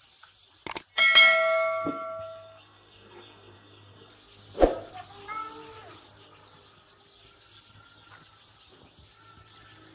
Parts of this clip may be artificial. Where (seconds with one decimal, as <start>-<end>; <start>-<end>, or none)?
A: 0.9-4.1